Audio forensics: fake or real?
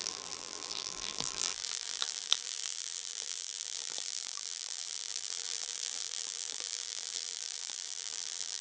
fake